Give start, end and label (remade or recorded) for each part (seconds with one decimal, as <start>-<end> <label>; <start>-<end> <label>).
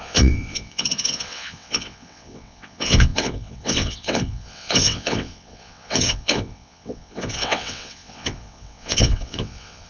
0.0-9.9 remade